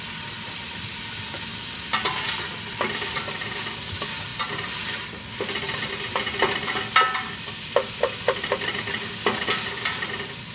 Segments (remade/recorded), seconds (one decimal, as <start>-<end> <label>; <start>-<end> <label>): 0.0-10.5 recorded